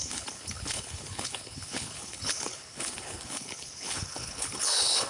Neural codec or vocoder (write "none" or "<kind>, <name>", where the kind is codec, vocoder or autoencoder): codec, HILCodec